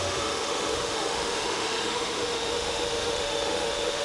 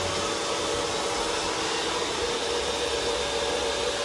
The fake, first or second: first